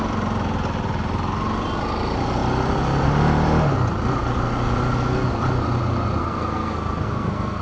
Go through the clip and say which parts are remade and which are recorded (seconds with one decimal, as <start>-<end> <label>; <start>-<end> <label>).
0.0-6.2 recorded; 6.2-7.6 remade